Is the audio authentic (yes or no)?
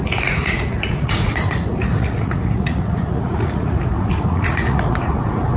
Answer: no